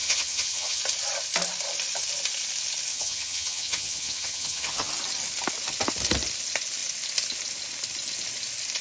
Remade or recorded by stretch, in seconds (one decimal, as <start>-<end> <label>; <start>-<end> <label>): 0.0-0.8 remade; 0.8-2.9 recorded; 2.9-4.9 remade; 4.9-8.8 recorded